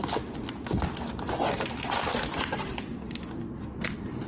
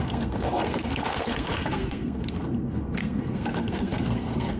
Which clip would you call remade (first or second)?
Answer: second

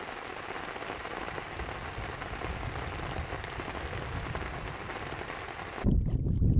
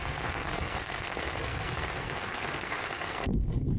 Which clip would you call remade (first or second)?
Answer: second